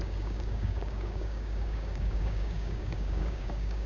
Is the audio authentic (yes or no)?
no